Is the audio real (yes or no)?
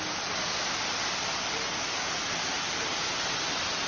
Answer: yes